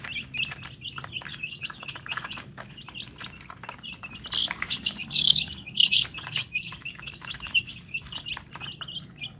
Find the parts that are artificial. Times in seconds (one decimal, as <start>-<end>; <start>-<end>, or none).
1.3-2.8; 4.4-8.3